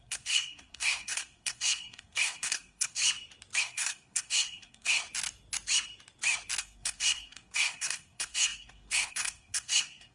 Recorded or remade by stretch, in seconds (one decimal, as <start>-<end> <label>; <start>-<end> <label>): 0.0-3.0 remade; 3.0-3.6 recorded; 3.6-5.0 remade; 5.0-6.6 recorded; 6.6-10.1 remade